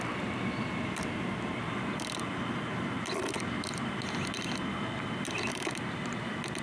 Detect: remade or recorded recorded